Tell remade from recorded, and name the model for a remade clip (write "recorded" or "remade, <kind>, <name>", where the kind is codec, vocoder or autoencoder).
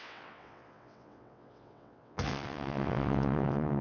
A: remade, vocoder, WaveNeXt